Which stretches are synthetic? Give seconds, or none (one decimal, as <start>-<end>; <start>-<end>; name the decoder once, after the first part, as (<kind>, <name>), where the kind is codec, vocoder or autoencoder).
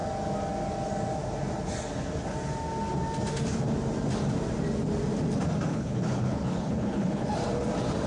5.7-7.3 (codec, HILCodec)